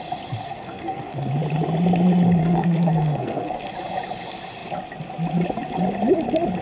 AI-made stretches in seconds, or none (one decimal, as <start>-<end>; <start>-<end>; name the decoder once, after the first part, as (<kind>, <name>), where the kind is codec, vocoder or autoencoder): 0.4-1.3 (codec, SNAC); 2.4-3.6